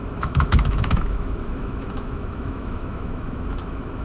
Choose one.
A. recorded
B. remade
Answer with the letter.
B